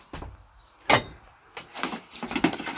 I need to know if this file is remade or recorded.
recorded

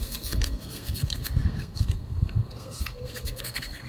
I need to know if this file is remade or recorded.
remade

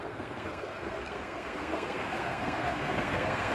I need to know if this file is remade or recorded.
remade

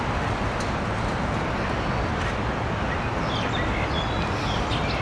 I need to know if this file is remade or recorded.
recorded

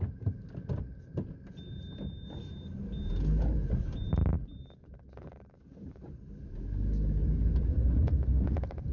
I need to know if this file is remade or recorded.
recorded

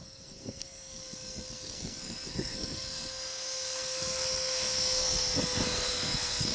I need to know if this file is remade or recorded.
remade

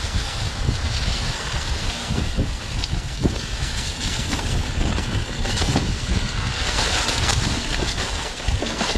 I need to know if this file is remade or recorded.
remade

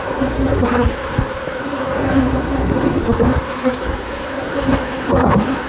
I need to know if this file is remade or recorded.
remade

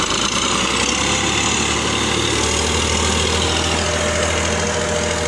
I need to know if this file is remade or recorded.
recorded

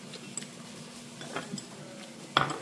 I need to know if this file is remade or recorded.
recorded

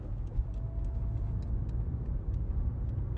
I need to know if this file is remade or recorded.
recorded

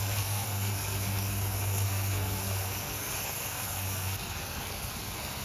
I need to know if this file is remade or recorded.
remade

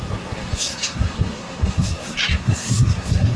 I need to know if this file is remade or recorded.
remade